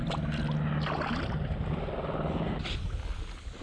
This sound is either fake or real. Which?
real